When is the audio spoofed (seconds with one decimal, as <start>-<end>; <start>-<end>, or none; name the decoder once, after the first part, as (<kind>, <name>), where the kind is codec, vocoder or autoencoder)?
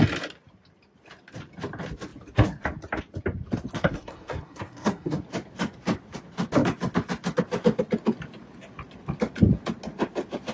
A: 3.8-5.2 (codec, SNAC)